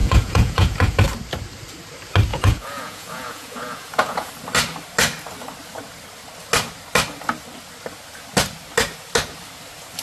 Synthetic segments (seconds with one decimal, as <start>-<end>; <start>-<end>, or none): 0.0-1.0; 2.3-4.3